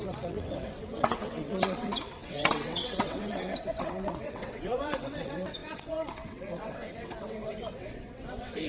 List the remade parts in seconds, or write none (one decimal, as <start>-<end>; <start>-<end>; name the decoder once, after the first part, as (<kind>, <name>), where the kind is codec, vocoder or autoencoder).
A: 0.0-8.7 (vocoder, WaveNeXt)